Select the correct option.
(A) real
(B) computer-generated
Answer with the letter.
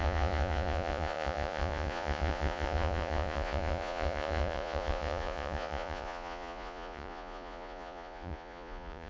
B